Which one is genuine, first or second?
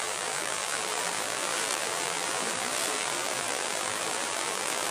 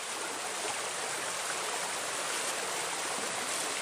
second